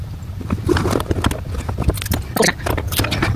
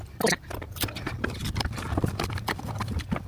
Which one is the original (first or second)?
first